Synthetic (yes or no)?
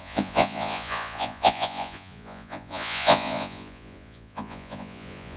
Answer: yes